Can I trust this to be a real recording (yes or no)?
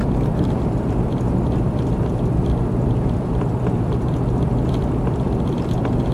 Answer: no